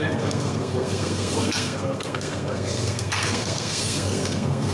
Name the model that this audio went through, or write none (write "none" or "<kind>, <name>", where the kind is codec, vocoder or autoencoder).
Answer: codec, SNAC